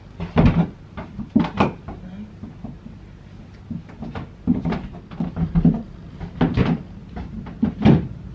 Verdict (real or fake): real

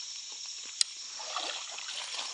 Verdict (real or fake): real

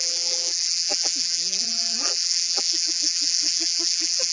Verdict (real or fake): fake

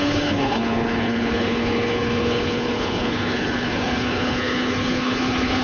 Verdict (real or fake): fake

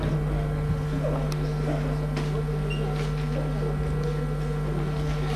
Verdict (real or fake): real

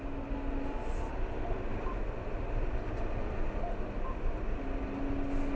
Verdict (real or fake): real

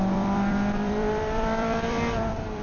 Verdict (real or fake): fake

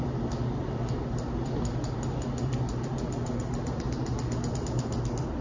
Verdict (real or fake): real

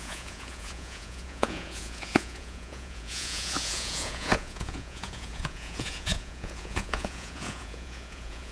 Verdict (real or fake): fake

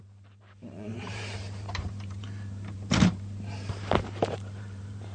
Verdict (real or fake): fake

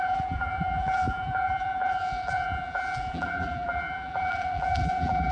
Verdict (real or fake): fake